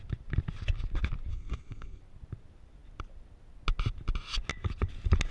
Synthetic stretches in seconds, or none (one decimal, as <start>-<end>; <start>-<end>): 1.3-2.0

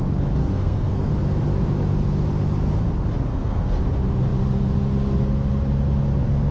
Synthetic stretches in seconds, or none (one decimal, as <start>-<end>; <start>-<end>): 0.4-1.1; 3.3-3.8